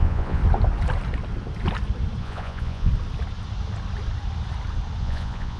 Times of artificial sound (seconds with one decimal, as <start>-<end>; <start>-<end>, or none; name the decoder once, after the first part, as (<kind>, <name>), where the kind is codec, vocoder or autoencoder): 0.0-0.4 (vocoder, Vocos); 2.2-2.9; 5.0-5.6